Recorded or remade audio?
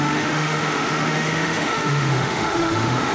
remade